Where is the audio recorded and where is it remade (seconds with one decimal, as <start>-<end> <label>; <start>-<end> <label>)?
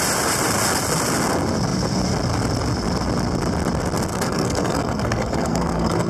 0.0-4.1 recorded; 4.1-6.1 remade